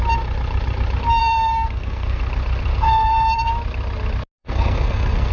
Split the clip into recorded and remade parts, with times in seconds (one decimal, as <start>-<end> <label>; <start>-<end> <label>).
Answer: 0.0-1.2 recorded; 1.2-2.2 remade; 2.2-2.7 recorded; 2.7-3.5 remade; 3.5-4.4 recorded; 4.4-5.3 remade